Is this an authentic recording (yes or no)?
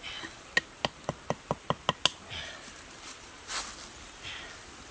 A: yes